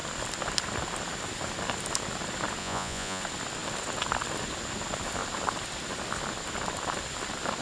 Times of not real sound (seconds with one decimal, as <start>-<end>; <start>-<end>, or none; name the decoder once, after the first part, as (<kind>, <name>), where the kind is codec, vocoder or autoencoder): 2.6-3.2 (vocoder, Vocos)